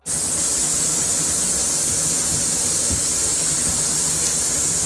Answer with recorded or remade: recorded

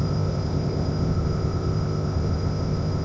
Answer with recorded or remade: remade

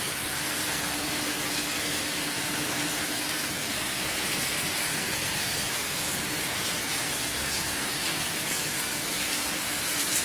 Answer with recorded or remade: remade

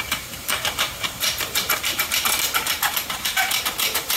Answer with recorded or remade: remade